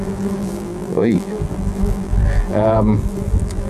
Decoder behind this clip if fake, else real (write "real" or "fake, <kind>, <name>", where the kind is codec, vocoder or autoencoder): fake, vocoder, BigVGAN v2